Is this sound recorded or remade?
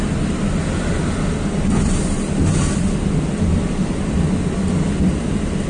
recorded